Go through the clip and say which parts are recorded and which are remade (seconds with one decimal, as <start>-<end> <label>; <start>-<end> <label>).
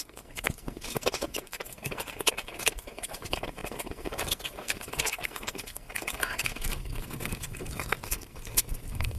0.0-9.2 remade